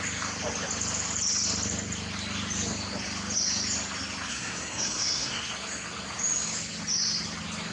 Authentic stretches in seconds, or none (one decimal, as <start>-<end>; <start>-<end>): 0.0-4.3; 5.4-7.7